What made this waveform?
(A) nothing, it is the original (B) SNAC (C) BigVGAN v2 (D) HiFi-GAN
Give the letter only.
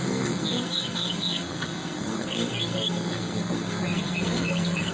B